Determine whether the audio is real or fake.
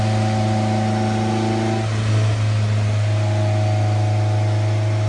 real